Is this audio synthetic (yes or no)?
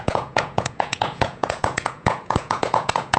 yes